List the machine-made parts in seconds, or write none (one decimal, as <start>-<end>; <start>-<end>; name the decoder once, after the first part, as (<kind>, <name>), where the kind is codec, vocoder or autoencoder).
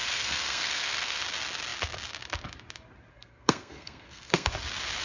0.0-1.2 (codec, SNAC); 3.1-4.5